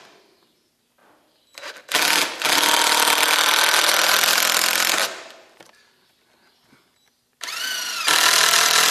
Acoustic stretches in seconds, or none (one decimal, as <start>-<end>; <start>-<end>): 0.0-8.9